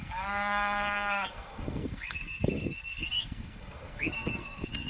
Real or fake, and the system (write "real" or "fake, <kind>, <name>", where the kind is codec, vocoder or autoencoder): fake, codec, SNAC